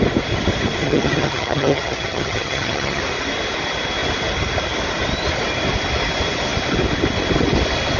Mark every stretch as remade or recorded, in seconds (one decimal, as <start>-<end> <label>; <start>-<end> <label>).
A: 0.0-0.8 recorded; 0.8-3.0 remade; 3.0-8.0 recorded